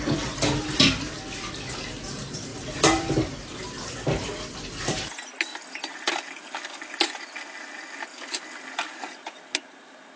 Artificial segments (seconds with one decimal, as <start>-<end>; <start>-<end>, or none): 2.5-3.3